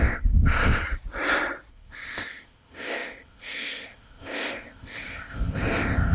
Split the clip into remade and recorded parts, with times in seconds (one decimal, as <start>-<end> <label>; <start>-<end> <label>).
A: 0.0-0.8 remade; 0.8-1.7 recorded; 1.7-6.1 remade